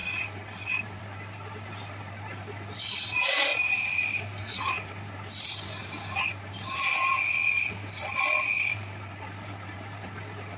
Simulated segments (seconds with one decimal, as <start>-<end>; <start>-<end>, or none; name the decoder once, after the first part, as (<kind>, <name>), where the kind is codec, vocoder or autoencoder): none